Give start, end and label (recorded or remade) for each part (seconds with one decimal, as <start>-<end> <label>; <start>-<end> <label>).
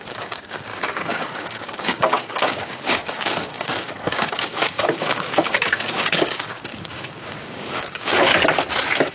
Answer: 0.0-8.3 remade; 8.3-9.1 recorded